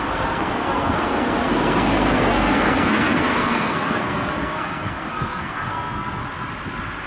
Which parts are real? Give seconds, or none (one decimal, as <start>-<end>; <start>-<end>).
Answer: 6.2-7.1